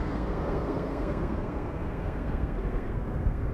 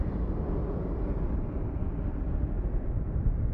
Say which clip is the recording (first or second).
second